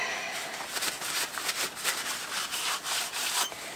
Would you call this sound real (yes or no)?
no